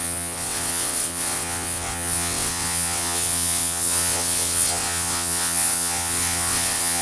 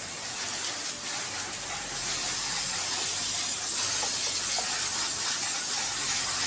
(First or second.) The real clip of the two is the second